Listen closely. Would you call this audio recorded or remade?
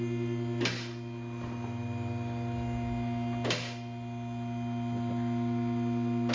recorded